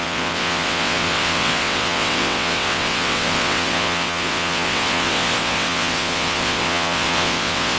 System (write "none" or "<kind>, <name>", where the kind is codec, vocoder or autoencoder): vocoder, WaveNeXt